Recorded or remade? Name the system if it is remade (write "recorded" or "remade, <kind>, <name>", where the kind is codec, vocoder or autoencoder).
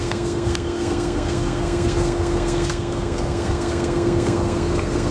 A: remade, codec, SNAC